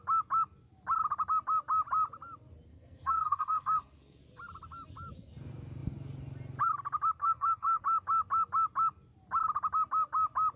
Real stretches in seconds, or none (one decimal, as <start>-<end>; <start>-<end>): 0.0-2.7; 4.2-7.2; 7.8-10.6